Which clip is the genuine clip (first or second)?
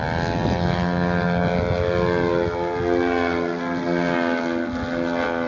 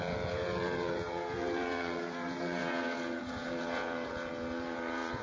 first